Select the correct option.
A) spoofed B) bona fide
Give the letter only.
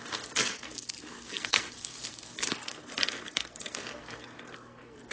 A